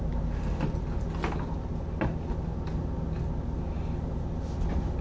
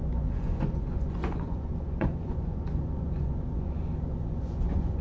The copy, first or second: second